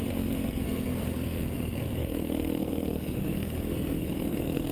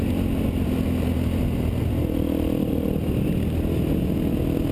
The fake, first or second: first